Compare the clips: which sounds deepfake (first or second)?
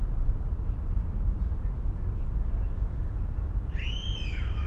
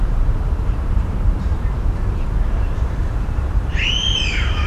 second